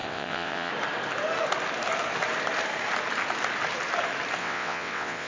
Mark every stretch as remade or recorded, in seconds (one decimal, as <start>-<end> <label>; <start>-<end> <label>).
0.0-0.7 remade; 0.7-4.4 recorded; 4.4-5.3 remade